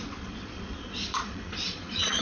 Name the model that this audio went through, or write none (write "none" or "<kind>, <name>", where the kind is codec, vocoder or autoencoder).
vocoder, Vocos